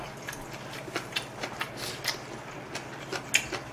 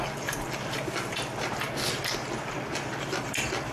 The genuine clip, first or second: first